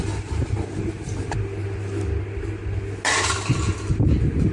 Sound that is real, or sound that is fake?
real